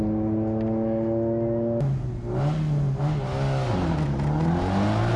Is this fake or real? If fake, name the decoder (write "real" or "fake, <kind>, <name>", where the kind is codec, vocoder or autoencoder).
real